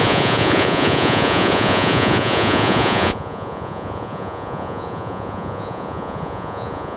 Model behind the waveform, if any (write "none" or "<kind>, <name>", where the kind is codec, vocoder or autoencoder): vocoder, Vocos